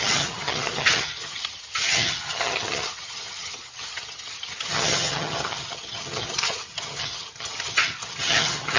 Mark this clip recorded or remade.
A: remade